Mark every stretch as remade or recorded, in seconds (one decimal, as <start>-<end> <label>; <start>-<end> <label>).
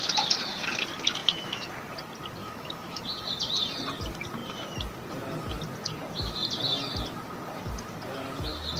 0.0-1.2 recorded; 1.2-1.7 remade; 1.7-2.4 recorded; 2.4-3.0 remade; 3.0-8.8 recorded